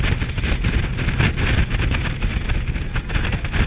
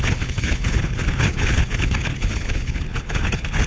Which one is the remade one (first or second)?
second